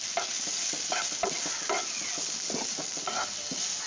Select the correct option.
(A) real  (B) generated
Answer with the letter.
A